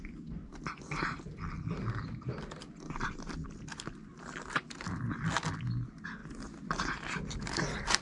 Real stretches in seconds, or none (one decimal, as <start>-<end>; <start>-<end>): 0.0-8.0